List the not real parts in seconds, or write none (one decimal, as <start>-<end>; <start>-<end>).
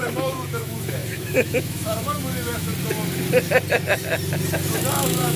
0.0-2.7; 4.9-5.4